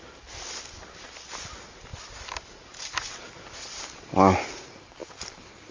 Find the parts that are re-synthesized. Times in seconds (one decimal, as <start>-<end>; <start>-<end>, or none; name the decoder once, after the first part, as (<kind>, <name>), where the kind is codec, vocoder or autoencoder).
none